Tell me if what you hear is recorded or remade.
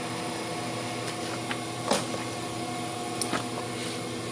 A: recorded